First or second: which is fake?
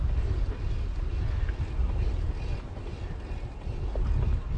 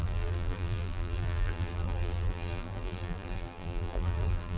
second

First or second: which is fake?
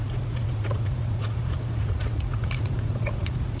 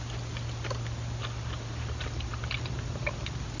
first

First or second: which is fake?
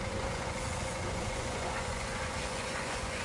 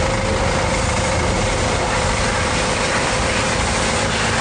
first